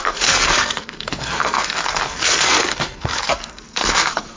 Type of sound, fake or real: fake